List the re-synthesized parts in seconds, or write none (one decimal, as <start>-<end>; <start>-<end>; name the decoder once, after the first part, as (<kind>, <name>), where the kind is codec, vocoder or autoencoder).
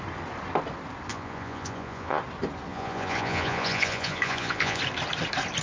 1.1-2.2 (vocoder, Vocos); 2.7-4.8